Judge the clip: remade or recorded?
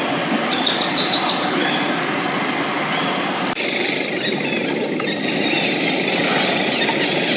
recorded